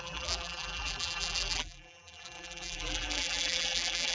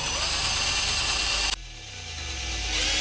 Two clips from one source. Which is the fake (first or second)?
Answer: first